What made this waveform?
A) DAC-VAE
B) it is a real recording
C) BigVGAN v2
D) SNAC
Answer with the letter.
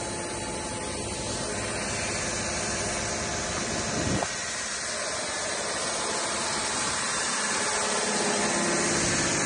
B